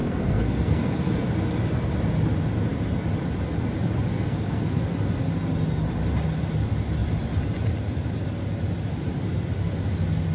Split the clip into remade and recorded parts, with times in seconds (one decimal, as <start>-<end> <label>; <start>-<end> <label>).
0.0-1.0 remade; 1.0-4.1 recorded; 4.1-4.8 remade; 4.8-10.3 recorded